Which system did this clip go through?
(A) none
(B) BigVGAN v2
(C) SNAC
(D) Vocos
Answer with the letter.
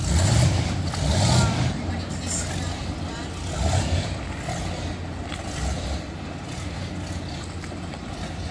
A